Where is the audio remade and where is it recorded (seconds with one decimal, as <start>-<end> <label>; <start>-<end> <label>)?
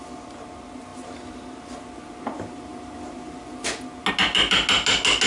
0.0-5.3 recorded